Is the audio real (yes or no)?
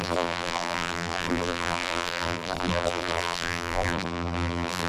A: no